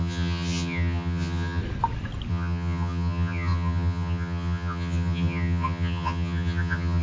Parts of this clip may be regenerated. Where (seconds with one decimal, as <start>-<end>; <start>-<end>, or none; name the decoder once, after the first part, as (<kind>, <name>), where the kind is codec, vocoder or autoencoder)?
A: 0.0-1.6 (vocoder, HiFi-GAN); 2.3-7.0